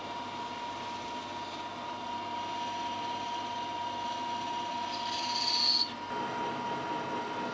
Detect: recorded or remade recorded